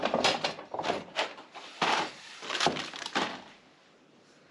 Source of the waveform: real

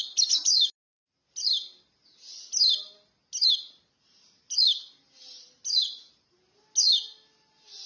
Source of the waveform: real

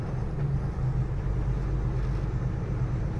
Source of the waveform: real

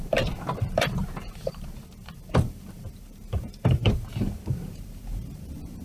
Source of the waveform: fake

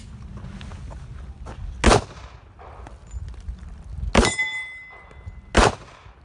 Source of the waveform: real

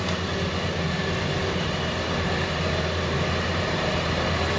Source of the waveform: fake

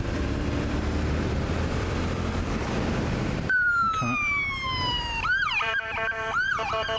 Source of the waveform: fake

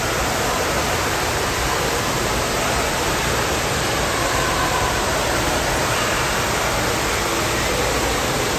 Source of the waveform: real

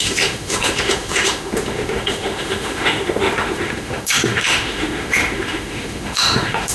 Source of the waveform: fake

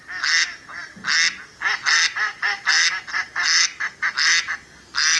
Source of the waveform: real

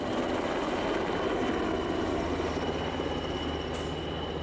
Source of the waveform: real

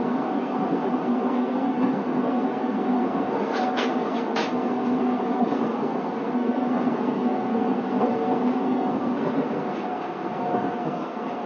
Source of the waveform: fake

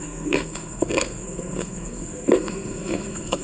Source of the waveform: fake